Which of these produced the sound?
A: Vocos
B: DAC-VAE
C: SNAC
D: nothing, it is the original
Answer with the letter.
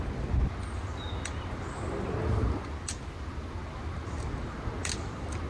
D